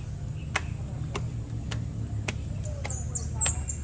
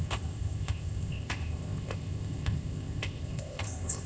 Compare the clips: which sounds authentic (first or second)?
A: first